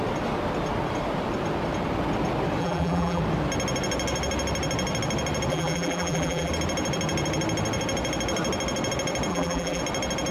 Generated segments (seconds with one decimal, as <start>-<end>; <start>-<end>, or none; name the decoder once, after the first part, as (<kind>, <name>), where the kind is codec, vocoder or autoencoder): 2.6-3.2 (vocoder, BigVGAN v2); 5.5-6.5; 9.3-9.8